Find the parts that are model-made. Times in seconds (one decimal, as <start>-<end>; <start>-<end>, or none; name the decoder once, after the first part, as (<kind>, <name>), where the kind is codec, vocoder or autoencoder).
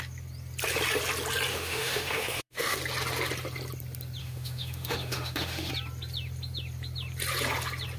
1.5-2.8 (autoencoder, DAC-VAE); 4.2-5.7